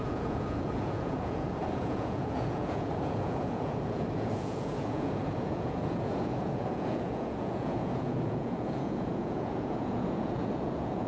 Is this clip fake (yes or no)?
yes